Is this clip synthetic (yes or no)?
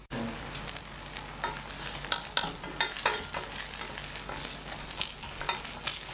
no